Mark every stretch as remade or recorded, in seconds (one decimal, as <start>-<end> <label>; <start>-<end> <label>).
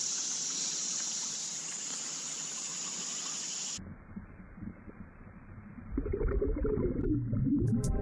0.0-2.7 remade; 2.7-4.0 recorded; 4.0-8.0 remade